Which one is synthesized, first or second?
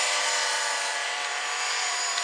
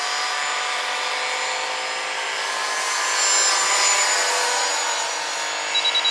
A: first